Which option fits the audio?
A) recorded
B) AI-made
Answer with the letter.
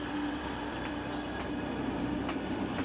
B